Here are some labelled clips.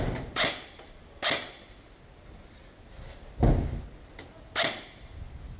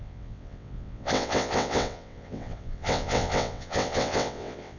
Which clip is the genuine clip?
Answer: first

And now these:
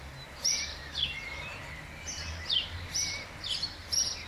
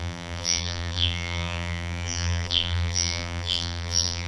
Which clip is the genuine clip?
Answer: first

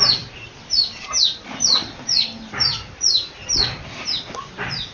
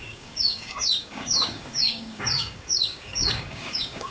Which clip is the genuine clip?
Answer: first